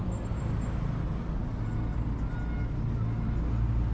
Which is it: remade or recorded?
recorded